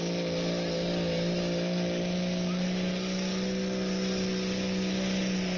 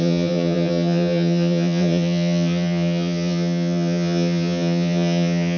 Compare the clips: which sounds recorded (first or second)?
first